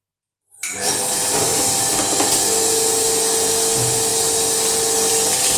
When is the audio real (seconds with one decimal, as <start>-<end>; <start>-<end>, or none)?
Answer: 0.0-5.6